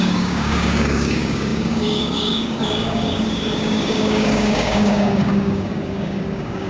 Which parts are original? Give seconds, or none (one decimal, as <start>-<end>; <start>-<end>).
none